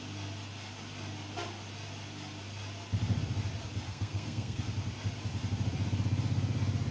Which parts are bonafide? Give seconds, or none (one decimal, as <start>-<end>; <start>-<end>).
0.0-3.9; 4.6-6.9